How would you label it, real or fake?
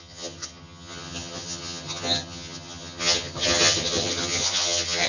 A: fake